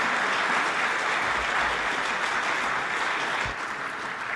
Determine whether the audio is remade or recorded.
recorded